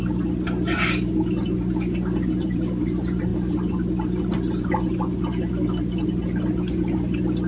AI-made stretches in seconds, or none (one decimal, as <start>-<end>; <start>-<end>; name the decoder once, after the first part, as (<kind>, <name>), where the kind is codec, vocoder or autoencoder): none